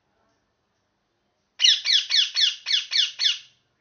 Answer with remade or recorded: recorded